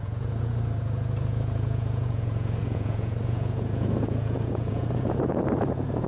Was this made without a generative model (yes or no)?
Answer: no